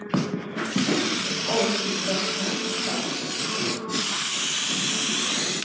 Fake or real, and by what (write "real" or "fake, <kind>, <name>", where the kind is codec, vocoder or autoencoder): real